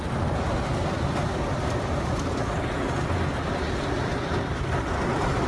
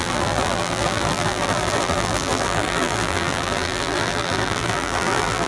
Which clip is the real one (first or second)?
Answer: first